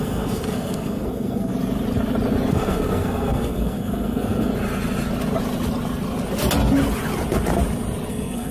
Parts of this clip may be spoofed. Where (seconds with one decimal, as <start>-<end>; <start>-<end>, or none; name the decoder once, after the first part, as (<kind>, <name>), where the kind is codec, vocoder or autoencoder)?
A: 0.0-1.5 (codec, SNAC); 2.5-4.5; 8.1-8.5